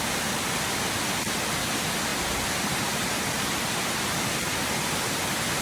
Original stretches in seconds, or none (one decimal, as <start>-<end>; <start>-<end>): 0.0-5.6